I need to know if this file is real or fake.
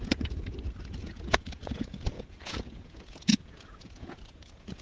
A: fake